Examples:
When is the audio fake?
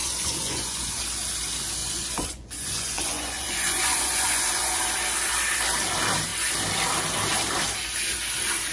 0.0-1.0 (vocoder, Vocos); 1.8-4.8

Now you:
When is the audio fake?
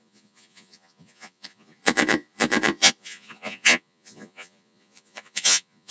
0.0-5.9 (vocoder, Vocos)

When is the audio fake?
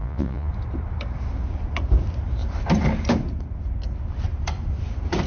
0.0-0.5 (vocoder, Vocos)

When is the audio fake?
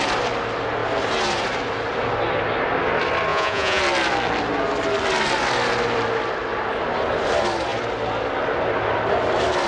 3.3-3.8 (vocoder, Vocos)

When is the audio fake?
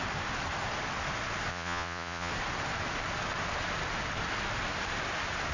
1.5-2.3 (vocoder, Vocos)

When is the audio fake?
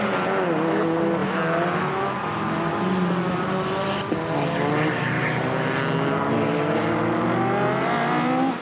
none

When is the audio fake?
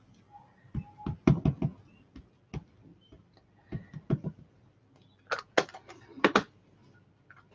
none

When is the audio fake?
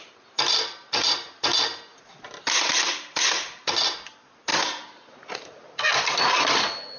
none